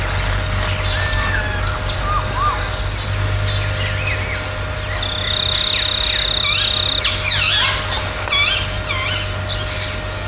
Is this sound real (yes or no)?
yes